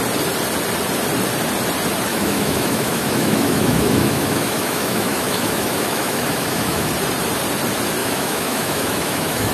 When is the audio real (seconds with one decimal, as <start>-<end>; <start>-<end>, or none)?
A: 0.0-2.1; 6.9-8.0